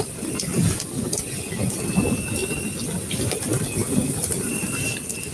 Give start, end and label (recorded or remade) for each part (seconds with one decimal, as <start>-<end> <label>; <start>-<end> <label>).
0.0-3.8 recorded; 3.8-5.3 remade